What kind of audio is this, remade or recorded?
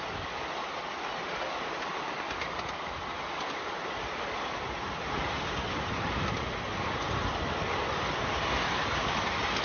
recorded